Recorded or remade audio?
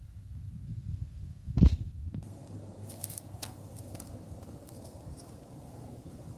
remade